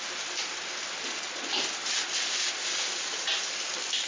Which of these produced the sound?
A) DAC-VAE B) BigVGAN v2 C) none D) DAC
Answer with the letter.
C